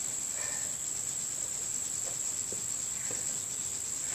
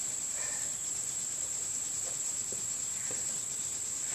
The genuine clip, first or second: first